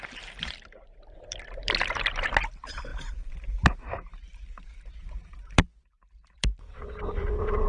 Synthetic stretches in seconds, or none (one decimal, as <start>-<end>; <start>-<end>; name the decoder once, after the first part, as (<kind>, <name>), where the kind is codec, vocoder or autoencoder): 0.0-7.7 (vocoder, BigVGAN v2)